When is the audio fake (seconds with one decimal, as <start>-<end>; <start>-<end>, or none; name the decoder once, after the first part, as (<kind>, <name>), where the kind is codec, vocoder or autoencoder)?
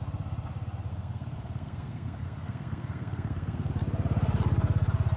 0.9-3.7 (codec, SNAC)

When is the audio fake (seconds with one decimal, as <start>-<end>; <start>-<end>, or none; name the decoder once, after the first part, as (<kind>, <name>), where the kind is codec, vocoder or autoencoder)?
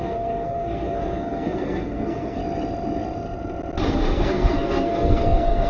0.0-2.4 (codec, SNAC); 3.9-5.7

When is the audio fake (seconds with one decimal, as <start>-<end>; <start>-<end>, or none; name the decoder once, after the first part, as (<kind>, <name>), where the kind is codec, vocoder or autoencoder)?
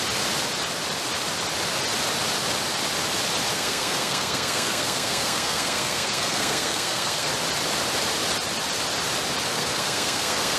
3.5-7.3 (codec, SNAC); 9.5-10.6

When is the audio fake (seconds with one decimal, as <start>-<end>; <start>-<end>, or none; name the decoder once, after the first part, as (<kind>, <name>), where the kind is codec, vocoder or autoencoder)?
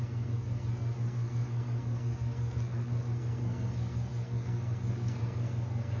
0.0-6.0 (codec, SNAC)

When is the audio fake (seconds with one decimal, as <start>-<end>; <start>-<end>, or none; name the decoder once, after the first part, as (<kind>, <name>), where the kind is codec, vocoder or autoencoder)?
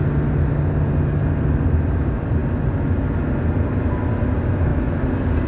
none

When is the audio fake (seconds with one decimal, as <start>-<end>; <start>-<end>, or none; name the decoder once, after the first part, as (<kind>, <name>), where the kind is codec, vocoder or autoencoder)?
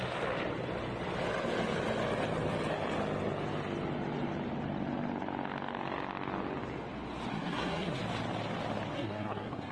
7.3-8.0 (codec, SNAC); 8.9-9.7